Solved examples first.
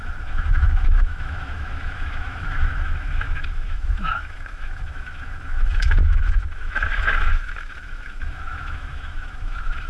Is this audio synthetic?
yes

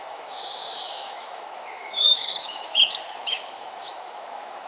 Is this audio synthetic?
yes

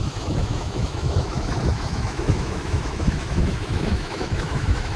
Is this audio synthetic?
yes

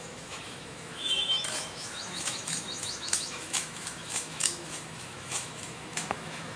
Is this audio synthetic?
yes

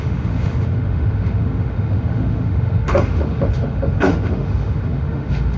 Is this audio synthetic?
yes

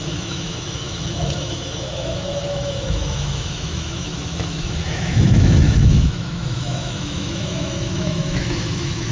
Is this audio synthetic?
yes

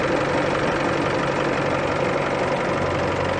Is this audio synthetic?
no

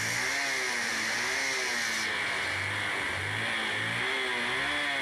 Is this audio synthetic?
no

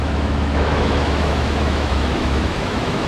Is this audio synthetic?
yes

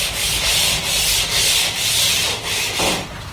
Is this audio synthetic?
no